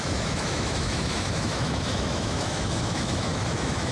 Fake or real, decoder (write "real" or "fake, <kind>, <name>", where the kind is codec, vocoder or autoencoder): fake, autoencoder, DAC-VAE